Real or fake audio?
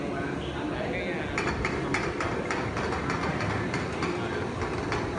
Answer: real